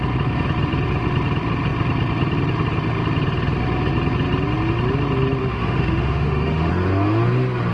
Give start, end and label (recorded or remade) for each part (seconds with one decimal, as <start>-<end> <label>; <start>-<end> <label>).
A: 0.0-5.4 recorded; 5.4-6.7 remade; 6.7-7.7 recorded